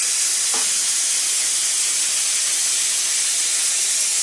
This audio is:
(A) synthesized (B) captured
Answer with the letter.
B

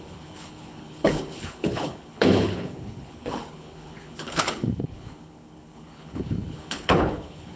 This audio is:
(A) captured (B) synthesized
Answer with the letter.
B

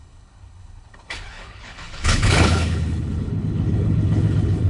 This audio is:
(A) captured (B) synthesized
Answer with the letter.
B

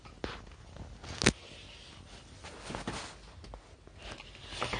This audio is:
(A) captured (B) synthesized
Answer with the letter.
A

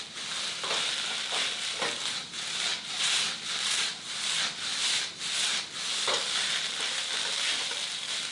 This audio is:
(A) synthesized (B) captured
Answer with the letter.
B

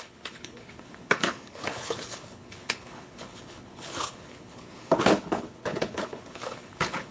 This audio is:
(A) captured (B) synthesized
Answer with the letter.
B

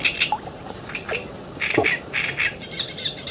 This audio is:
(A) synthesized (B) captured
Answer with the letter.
B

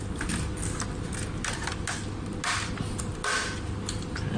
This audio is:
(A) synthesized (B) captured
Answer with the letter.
B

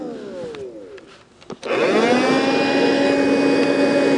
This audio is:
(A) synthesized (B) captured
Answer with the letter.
B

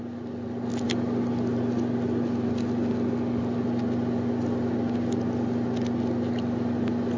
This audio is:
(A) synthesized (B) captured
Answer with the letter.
B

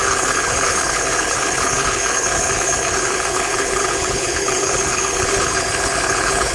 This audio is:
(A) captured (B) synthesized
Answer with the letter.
B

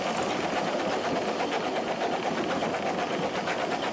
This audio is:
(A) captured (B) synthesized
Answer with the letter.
A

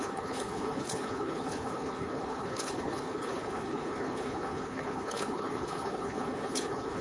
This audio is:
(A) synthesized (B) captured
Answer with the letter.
A